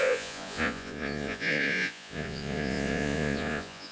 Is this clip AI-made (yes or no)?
yes